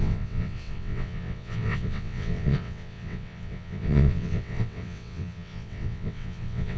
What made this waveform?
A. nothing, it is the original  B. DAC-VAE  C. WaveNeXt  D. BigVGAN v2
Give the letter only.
C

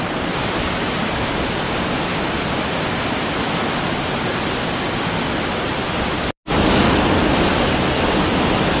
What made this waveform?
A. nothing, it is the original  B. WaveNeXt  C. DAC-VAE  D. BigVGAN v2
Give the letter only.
A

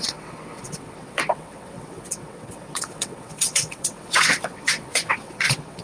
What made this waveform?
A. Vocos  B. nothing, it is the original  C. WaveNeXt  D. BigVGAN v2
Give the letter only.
C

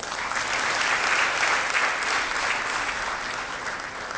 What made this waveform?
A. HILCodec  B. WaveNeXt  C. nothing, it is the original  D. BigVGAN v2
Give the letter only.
C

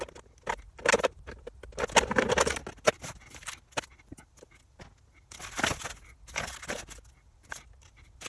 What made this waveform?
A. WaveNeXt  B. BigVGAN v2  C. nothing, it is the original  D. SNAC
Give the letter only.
C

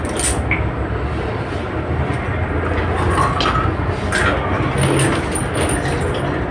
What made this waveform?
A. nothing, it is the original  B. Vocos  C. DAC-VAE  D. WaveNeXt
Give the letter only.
A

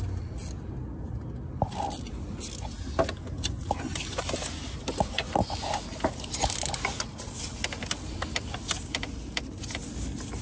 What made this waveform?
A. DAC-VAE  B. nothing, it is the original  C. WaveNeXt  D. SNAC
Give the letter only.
B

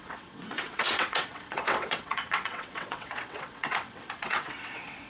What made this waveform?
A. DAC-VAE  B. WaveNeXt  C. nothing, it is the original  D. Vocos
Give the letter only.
B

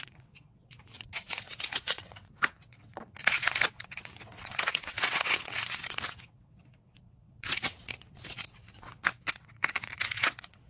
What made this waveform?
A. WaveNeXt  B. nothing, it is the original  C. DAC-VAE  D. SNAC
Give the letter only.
A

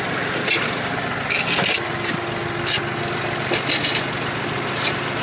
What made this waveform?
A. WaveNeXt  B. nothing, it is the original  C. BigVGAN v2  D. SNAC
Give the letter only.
B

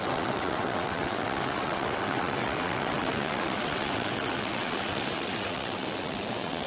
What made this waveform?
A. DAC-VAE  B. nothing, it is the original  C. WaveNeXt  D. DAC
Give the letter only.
C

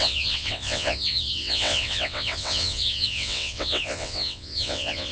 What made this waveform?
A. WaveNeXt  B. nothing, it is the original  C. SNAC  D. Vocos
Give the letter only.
A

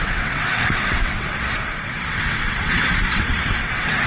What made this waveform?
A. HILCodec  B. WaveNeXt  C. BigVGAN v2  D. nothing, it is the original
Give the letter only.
B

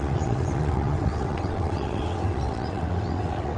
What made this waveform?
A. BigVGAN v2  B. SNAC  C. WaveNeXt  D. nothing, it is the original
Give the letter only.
C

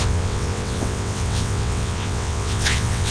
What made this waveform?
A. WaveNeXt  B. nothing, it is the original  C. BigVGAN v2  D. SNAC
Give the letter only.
A